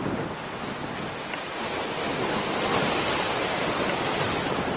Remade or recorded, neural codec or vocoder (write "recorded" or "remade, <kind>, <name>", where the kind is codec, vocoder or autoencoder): recorded